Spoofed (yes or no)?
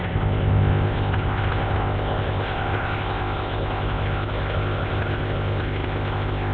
yes